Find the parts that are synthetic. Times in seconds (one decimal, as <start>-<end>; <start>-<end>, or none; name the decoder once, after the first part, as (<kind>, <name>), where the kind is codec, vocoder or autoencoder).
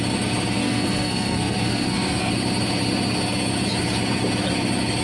0.6-2.3 (codec, SNAC)